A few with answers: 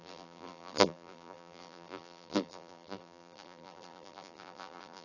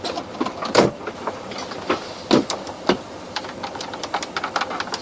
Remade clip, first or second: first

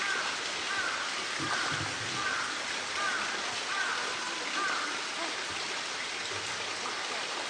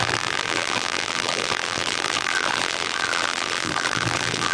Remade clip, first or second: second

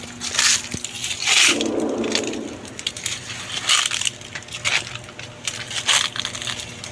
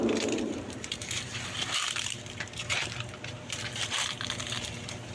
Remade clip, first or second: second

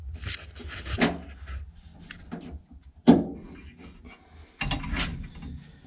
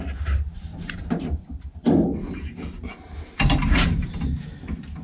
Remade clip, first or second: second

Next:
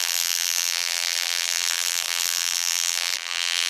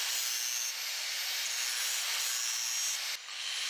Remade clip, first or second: first